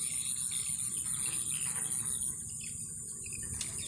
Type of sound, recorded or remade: recorded